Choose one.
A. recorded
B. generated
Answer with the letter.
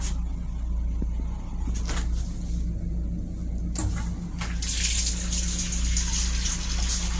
A